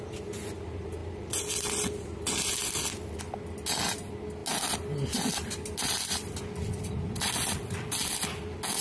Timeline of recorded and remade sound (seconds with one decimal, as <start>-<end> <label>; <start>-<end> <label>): 0.0-8.8 recorded